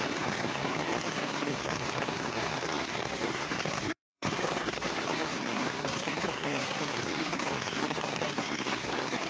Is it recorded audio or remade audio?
remade